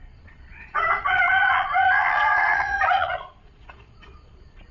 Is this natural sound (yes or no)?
no